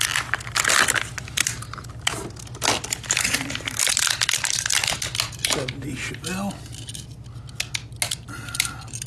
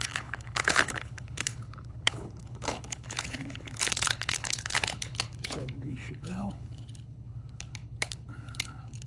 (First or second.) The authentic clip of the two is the first